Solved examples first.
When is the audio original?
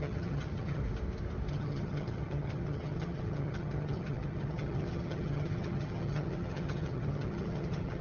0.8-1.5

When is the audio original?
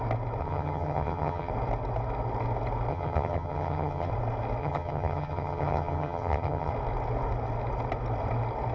0.0-0.4; 1.5-2.9; 4.1-4.6; 6.7-8.7